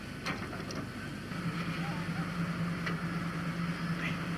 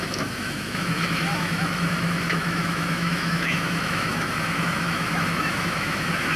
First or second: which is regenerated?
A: second